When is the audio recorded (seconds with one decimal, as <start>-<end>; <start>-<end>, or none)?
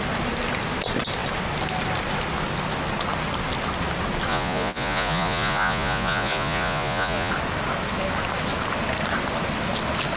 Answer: 0.0-4.3; 7.3-10.2